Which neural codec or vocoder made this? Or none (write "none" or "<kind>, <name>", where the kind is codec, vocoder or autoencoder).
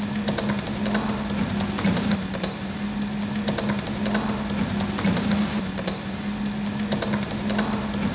none